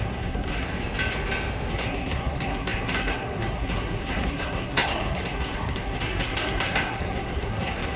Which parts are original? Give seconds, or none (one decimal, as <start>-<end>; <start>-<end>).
0.7-1.7